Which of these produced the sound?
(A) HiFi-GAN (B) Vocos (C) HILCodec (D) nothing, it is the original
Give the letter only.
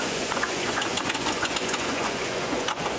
B